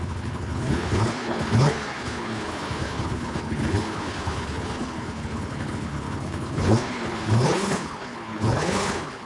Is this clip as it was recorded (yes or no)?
no